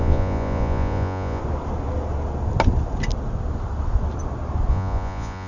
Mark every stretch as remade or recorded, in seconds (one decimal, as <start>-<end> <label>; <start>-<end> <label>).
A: 0.0-1.4 remade; 1.4-4.7 recorded; 4.7-5.5 remade

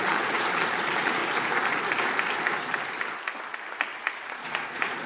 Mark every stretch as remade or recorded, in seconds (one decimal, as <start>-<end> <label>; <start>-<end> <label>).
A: 0.0-1.2 remade; 1.2-4.3 recorded; 4.3-5.1 remade

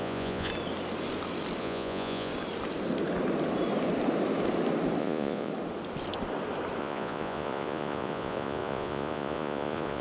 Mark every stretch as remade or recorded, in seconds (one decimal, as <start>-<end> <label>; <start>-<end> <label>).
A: 0.0-0.5 remade; 0.5-1.6 recorded; 1.6-2.3 remade; 2.3-5.0 recorded; 5.0-5.5 remade; 5.5-6.8 recorded; 6.8-10.0 remade

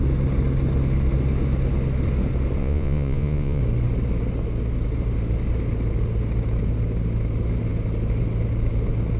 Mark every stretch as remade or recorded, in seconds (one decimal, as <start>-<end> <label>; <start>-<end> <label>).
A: 0.0-2.6 recorded; 2.6-3.6 remade; 3.6-9.2 recorded

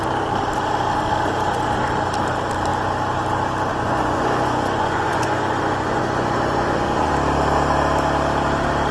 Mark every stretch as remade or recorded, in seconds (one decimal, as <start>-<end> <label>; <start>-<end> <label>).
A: 0.0-3.7 recorded; 3.7-7.1 remade; 7.1-8.9 recorded